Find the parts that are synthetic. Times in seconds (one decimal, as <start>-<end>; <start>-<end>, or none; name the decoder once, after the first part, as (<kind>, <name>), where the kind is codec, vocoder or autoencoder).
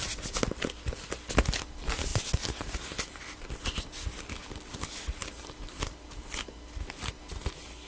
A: none